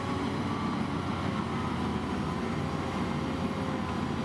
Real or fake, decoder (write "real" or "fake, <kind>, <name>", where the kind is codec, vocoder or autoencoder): real